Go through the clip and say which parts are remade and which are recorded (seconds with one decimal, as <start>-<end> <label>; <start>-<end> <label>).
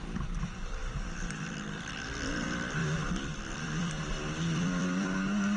0.0-5.6 remade